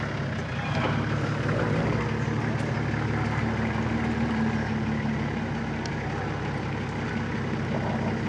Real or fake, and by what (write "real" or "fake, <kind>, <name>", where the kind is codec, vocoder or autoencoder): real